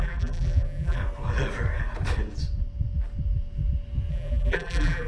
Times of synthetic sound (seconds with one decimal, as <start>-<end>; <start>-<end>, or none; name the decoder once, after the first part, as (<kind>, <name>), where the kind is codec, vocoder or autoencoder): 0.0-1.0 (vocoder, BigVGAN v2); 4.1-5.1